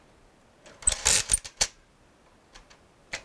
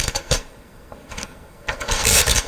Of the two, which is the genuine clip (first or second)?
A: first